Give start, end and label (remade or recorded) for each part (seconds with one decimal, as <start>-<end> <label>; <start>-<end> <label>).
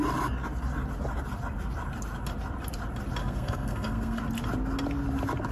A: 0.0-3.2 recorded; 3.2-4.2 remade; 4.2-5.5 recorded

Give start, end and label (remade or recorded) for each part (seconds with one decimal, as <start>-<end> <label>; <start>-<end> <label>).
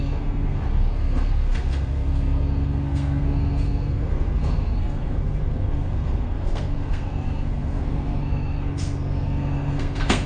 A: 0.0-10.3 remade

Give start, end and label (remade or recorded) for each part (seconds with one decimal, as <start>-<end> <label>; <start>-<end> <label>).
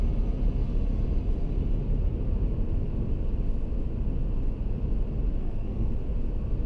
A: 0.0-5.4 recorded; 5.4-5.9 remade; 5.9-6.7 recorded